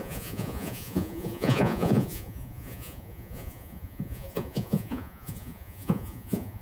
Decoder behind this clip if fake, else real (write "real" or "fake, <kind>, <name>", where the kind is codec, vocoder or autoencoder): fake, vocoder, Vocos